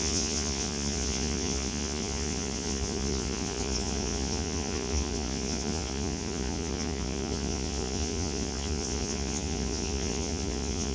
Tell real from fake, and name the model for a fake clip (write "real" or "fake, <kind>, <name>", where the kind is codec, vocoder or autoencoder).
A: fake, vocoder, Vocos